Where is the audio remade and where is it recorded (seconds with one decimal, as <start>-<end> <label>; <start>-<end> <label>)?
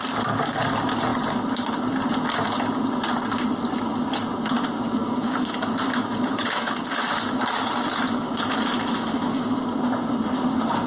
0.0-5.0 recorded; 5.0-9.6 remade; 9.6-10.9 recorded